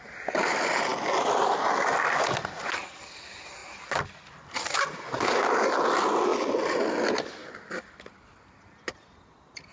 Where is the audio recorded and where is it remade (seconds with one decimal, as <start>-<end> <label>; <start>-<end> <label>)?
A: 0.0-9.7 recorded